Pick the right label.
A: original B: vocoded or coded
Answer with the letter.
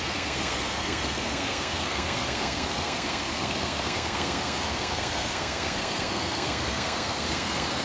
B